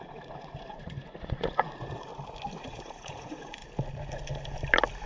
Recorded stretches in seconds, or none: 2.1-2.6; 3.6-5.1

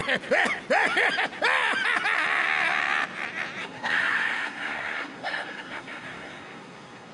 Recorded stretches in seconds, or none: 0.0-3.6

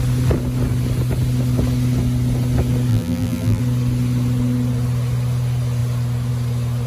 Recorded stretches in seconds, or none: 0.0-2.9; 3.6-6.9

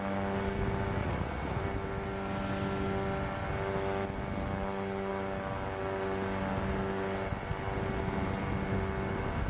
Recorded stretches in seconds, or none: 0.0-1.0; 1.6-9.5

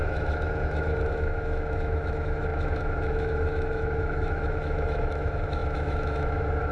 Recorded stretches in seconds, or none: none

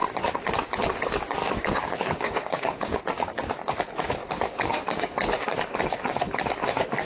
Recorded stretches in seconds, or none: 0.0-1.4; 3.0-4.2; 5.6-7.0